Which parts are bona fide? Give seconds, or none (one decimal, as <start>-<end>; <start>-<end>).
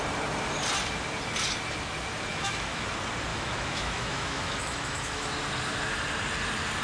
0.0-2.3; 2.9-3.3; 5.3-6.8